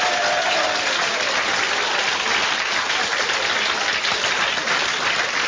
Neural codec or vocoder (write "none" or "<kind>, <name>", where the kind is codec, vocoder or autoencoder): none